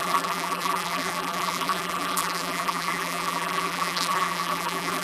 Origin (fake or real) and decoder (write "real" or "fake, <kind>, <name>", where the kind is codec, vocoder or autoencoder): fake, vocoder, BigVGAN v2